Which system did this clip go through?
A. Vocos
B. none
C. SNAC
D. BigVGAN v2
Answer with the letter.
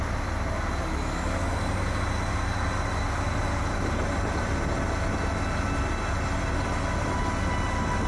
B